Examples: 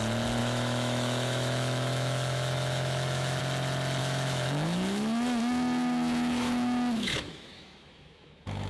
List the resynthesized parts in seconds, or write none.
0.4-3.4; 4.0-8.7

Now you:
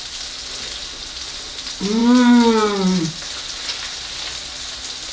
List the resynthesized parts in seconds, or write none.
none

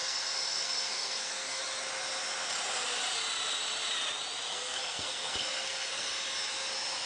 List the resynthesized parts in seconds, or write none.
0.0-1.6; 4.5-6.1